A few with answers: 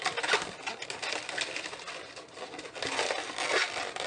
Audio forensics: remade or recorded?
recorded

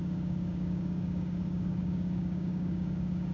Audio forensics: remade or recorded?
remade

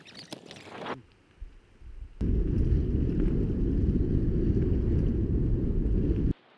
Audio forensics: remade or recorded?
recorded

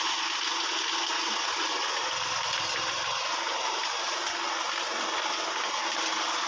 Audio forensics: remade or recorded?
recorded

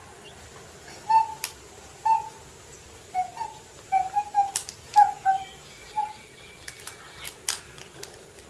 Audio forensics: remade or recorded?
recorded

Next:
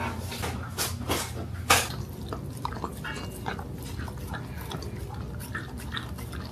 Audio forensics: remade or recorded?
recorded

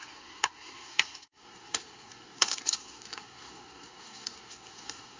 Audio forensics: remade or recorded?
remade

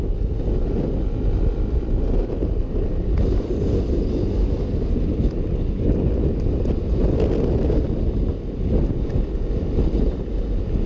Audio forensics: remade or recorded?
recorded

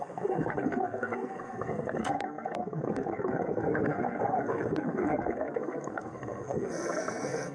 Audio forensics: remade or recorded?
remade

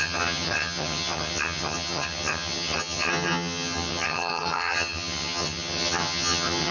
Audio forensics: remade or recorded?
remade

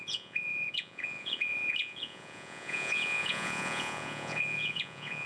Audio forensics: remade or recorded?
remade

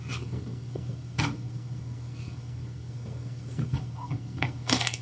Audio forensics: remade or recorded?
remade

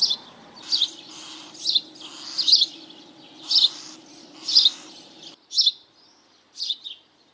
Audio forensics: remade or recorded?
recorded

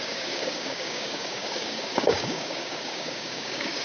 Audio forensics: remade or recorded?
remade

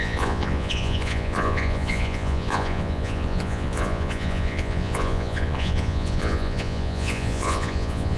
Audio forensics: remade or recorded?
remade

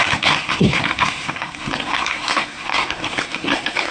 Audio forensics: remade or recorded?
remade